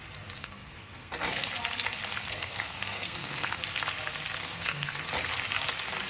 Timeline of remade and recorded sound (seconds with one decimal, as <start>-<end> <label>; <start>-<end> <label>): 0.0-0.4 recorded; 0.4-1.1 remade; 1.1-2.2 recorded; 2.2-3.6 remade; 3.6-4.4 recorded; 4.4-5.0 remade; 5.0-6.1 recorded